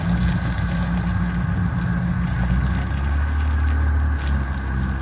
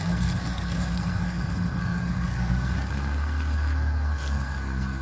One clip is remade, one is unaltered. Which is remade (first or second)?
second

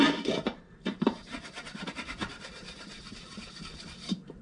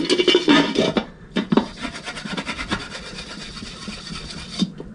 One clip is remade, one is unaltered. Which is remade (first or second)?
first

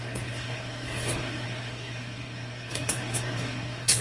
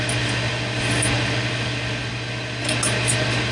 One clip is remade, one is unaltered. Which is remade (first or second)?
first